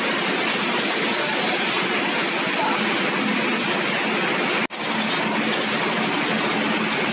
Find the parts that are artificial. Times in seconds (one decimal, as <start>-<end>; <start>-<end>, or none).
none